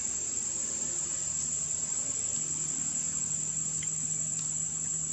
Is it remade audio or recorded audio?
recorded